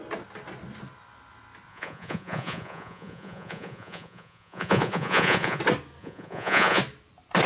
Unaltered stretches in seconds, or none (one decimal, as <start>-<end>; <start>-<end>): 0.0-1.7; 5.6-6.0; 6.8-7.5